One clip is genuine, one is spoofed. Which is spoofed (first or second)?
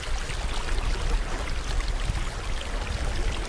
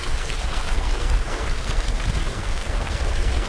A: second